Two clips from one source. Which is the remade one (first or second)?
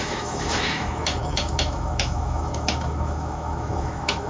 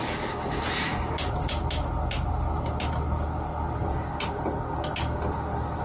first